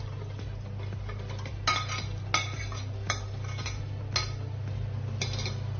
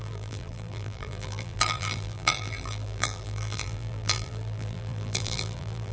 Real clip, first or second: first